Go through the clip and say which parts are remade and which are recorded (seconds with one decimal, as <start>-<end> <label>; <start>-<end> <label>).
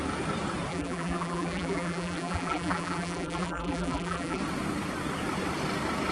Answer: 0.0-0.7 recorded; 0.7-4.4 remade; 4.4-6.1 recorded